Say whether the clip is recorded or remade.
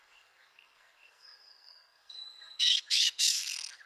remade